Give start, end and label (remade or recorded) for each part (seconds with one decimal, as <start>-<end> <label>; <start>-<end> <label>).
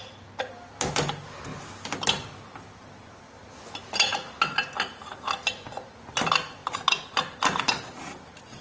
0.0-1.5 recorded; 1.5-3.2 remade; 3.2-8.6 recorded